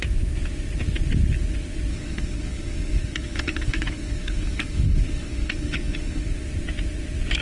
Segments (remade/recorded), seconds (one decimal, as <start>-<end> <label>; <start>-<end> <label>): 0.0-1.9 recorded; 1.9-6.3 remade; 6.3-7.4 recorded